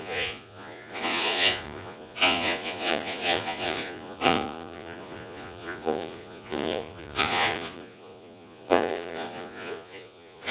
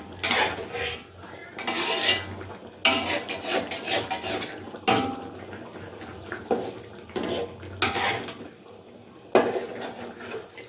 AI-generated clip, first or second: first